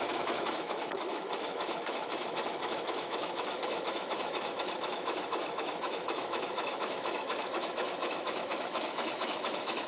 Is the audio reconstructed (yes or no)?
yes